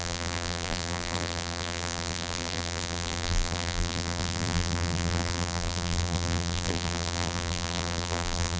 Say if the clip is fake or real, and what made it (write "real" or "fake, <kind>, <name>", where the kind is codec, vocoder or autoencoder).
fake, vocoder, BigVGAN v2